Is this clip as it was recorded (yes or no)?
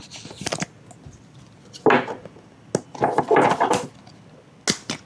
yes